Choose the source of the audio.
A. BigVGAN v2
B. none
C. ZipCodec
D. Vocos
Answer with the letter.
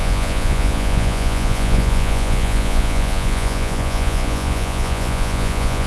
D